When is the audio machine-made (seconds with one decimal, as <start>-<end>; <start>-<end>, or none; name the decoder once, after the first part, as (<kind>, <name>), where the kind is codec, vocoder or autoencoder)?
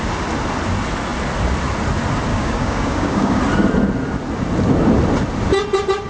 2.3-3.4 (codec, DAC)